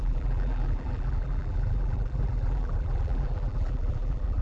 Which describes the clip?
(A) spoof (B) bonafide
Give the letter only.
A